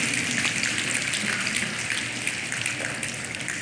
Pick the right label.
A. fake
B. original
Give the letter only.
B